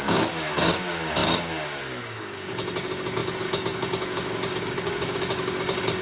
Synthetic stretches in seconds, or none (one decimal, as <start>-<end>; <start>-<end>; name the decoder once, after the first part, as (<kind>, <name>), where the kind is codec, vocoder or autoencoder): 0.0-6.0 (codec, DAC)